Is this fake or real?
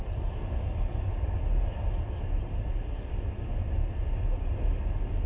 real